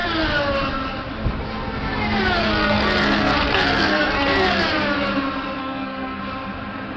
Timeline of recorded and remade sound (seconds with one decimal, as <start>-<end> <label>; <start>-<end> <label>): 0.0-2.4 recorded; 2.4-4.6 remade; 4.6-5.6 recorded; 5.6-6.2 remade; 6.2-7.0 recorded